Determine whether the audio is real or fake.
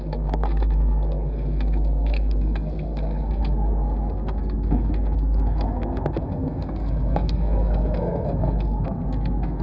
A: fake